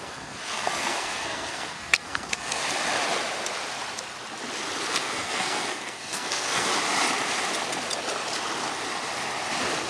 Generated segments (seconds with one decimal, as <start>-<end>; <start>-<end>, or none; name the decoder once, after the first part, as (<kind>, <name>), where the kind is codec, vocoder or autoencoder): 0.0-2.6 (codec, SNAC); 4.9-6.7

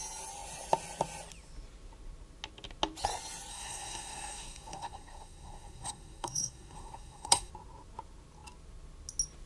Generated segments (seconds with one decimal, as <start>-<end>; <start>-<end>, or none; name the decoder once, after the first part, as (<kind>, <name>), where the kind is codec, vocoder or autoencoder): 3.5-7.5 (codec, SNAC)

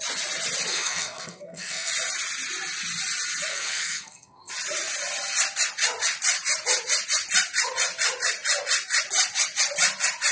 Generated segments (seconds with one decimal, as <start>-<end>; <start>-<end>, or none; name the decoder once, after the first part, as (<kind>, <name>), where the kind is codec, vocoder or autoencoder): 0.7-1.9 (codec, SNAC); 3.5-4.5

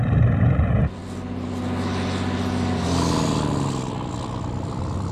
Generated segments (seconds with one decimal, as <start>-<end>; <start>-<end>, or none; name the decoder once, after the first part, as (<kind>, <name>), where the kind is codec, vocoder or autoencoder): none

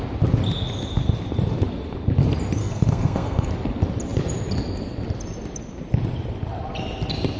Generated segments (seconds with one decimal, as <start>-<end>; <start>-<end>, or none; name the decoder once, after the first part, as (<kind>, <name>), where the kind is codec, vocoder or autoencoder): 2.6-3.5 (codec, SNAC)

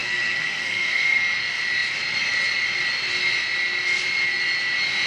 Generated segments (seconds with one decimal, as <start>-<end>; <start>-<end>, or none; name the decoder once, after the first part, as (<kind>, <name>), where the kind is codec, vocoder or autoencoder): 0.0-1.2 (codec, SNAC)